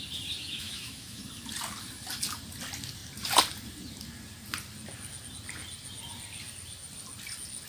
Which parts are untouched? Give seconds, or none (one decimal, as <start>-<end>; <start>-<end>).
0.0-0.4; 1.2-7.7